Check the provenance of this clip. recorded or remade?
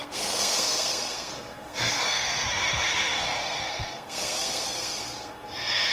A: remade